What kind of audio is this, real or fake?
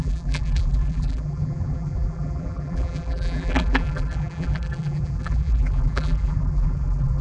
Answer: fake